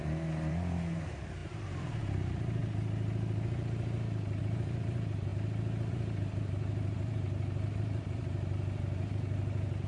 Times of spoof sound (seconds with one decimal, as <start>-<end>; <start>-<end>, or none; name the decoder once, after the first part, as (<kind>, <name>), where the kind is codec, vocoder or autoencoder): 0.0-2.6 (vocoder, BigVGAN v2); 4.4-5.3; 5.9-9.9